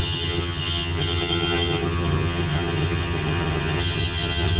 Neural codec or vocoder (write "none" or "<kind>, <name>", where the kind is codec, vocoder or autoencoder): vocoder, HiFi-GAN